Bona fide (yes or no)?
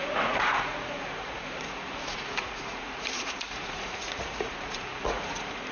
no